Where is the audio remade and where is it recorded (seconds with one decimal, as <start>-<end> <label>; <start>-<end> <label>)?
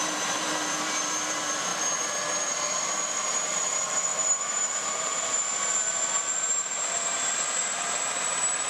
0.0-1.7 remade; 1.7-2.4 recorded; 2.4-8.7 remade